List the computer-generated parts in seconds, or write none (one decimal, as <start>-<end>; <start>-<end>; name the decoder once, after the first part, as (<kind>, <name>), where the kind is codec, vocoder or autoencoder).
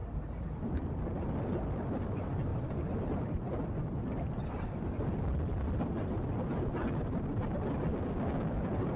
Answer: 7.9-8.6 (codec, DAC)